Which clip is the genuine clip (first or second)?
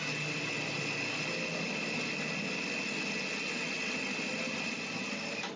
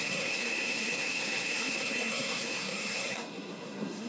first